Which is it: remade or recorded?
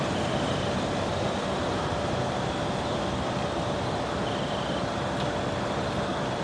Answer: recorded